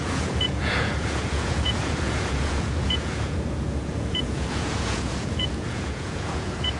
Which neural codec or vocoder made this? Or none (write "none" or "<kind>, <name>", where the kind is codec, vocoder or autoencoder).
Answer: vocoder, Vocos